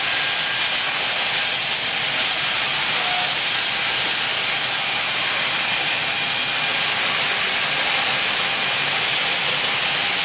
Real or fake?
real